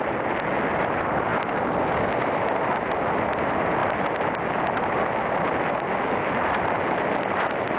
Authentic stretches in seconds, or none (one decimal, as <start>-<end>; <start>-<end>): 0.0-7.8